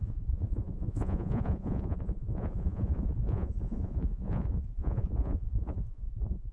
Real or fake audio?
fake